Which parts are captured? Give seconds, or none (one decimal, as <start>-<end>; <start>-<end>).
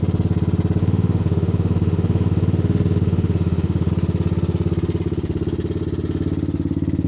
0.0-0.8; 3.9-7.1